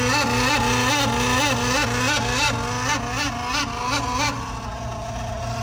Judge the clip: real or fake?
real